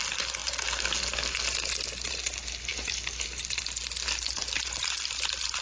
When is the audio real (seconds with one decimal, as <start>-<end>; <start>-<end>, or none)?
0.0-2.7; 3.6-5.6